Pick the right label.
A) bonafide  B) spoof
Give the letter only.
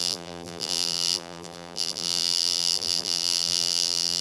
B